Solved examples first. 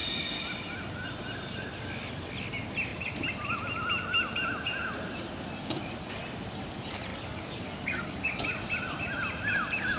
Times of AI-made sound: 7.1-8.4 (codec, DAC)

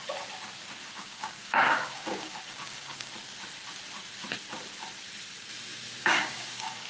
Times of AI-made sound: 0.8-3.1 (codec, DAC); 6.0-6.9